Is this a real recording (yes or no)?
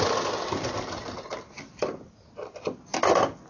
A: yes